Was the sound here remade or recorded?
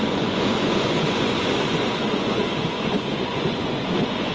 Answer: remade